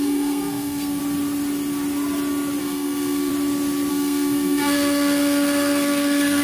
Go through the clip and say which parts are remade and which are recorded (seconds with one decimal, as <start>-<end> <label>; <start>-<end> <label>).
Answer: 0.0-1.0 remade; 1.0-2.6 recorded; 2.6-3.3 remade; 3.3-3.9 recorded; 3.9-6.4 remade